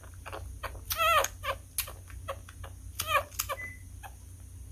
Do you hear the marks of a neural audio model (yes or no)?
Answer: no